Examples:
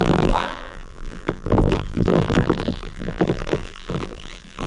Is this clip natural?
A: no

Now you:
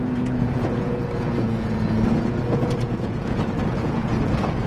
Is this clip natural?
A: no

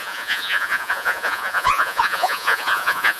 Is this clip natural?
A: no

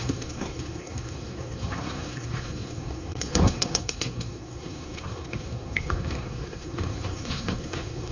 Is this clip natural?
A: no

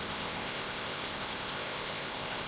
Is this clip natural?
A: no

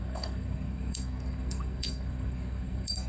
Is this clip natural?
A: no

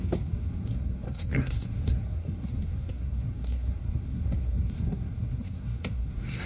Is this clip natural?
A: no